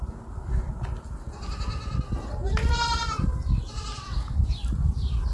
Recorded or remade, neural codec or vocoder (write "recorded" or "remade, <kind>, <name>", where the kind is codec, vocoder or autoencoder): recorded